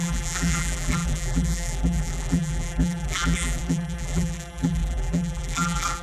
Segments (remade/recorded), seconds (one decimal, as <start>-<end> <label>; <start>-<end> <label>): 0.0-6.0 remade